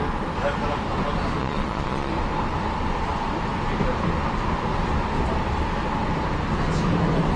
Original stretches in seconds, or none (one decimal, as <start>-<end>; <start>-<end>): 0.0-1.4; 2.1-7.4